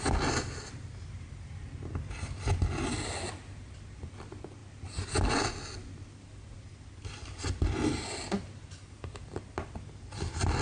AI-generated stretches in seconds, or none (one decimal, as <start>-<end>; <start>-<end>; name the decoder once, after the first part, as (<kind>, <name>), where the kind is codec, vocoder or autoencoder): none